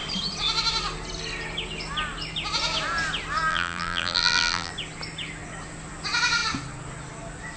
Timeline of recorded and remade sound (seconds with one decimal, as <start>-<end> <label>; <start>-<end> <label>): 0.0-3.5 recorded; 3.5-4.7 remade; 4.7-7.6 recorded